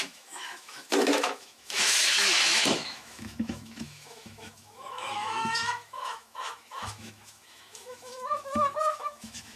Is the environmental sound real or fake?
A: fake